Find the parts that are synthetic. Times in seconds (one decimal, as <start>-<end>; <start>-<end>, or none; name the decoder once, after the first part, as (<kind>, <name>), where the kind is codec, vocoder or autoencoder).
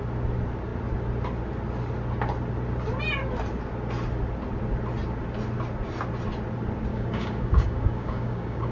6.9-8.7 (codec, DAC)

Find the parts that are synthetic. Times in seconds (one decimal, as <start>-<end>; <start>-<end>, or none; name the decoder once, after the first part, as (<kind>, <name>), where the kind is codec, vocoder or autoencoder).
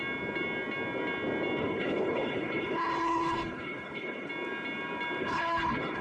1.6-4.3 (codec, HILCodec); 5.2-6.0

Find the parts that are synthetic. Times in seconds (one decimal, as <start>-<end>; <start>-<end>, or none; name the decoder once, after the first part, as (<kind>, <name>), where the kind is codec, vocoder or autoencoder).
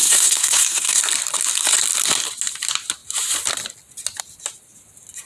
0.0-1.0 (codec, SNAC)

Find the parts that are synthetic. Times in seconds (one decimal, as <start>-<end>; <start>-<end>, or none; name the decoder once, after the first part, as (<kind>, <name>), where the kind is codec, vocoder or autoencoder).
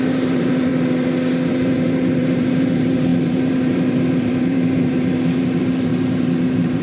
0.0-0.7 (vocoder, BigVGAN v2); 1.5-6.8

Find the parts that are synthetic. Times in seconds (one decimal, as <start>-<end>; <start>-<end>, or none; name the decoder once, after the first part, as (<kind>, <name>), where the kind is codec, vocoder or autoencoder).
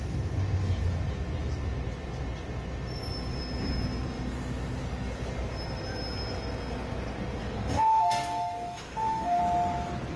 7.4-9.4 (codec, DAC)